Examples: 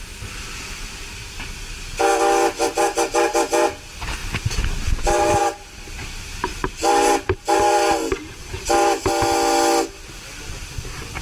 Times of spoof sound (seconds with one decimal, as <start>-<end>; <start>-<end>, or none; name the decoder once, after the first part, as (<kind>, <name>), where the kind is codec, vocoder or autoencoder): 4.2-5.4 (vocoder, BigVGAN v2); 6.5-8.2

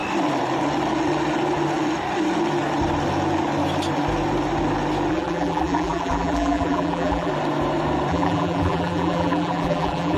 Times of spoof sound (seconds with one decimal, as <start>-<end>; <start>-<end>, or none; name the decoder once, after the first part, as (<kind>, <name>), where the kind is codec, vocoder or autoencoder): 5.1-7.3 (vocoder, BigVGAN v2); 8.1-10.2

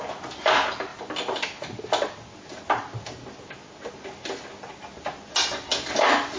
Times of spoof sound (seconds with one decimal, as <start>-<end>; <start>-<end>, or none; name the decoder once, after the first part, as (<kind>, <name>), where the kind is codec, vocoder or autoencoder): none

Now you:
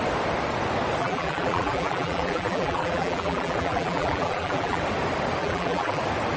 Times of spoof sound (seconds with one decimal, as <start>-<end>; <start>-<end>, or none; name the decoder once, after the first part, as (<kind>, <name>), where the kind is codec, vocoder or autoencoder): 1.0-4.8 (vocoder, BigVGAN v2); 5.4-6.0

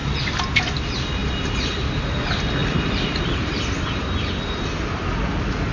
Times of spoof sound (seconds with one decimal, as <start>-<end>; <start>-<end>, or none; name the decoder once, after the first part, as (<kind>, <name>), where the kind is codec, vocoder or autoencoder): 1.2-2.0 (vocoder, BigVGAN v2); 2.6-3.6

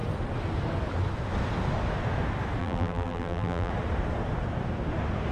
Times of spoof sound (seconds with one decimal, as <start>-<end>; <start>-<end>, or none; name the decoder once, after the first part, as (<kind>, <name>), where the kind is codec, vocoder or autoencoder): 2.6-3.7 (vocoder, BigVGAN v2)

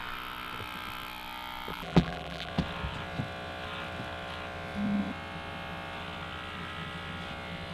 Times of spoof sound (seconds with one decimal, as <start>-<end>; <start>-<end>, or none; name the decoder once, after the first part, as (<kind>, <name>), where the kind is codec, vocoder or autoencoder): 1.7-2.5 (vocoder, BigVGAN v2)

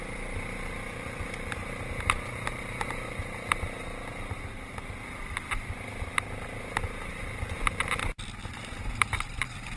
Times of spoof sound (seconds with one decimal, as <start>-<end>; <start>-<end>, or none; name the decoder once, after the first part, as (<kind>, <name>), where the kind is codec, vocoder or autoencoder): 0.0-1.6 (vocoder, BigVGAN v2); 6.6-8.0; 9.0-9.8